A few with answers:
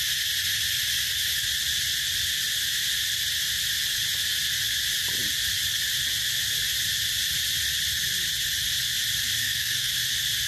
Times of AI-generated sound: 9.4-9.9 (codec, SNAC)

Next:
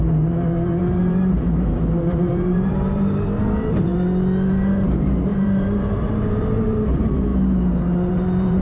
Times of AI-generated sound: 0.8-3.9 (vocoder, BigVGAN v2); 4.5-7.3; 8.1-8.6